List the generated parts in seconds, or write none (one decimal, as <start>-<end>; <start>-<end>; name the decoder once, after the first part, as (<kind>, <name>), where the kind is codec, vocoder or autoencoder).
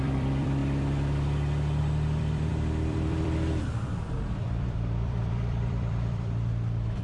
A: 0.0-0.6 (vocoder, BigVGAN v2); 1.8-7.0